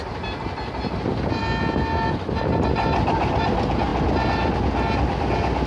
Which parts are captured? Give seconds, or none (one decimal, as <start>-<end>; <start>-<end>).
0.0-5.7